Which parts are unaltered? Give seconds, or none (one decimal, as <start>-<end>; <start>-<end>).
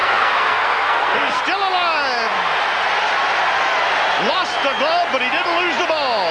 1.4-6.3